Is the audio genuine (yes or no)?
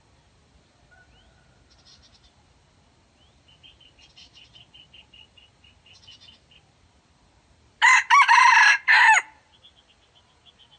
yes